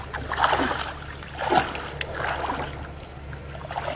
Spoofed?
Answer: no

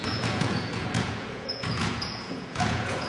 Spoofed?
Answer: yes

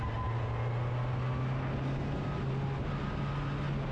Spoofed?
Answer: no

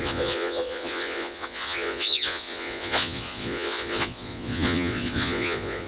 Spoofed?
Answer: yes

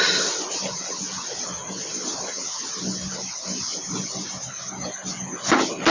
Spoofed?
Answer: no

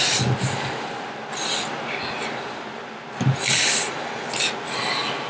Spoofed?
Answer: no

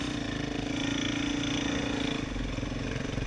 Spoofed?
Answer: no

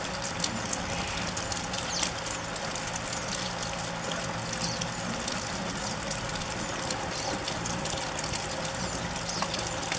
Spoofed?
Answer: no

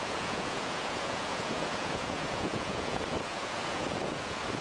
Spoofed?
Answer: yes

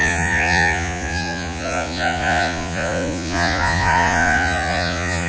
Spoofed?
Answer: yes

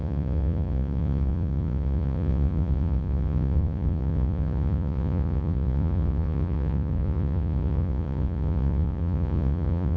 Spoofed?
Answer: yes